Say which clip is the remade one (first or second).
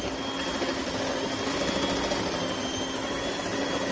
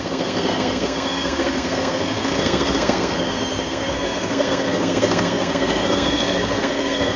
second